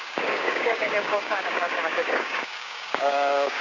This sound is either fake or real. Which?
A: fake